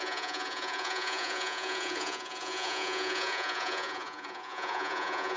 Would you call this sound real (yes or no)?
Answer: no